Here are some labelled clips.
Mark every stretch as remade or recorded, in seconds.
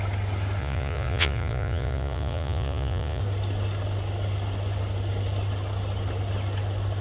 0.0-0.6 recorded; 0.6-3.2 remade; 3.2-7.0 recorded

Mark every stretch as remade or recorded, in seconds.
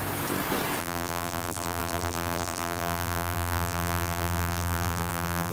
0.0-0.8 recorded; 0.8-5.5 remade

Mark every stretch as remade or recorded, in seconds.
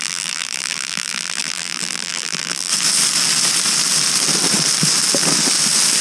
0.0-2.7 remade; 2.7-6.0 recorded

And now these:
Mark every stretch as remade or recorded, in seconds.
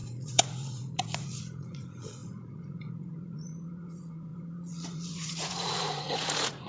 0.0-6.7 remade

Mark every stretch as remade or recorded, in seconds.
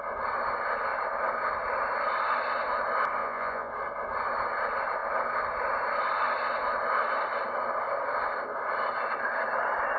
0.0-3.2 recorded; 3.2-3.7 remade; 3.7-10.0 recorded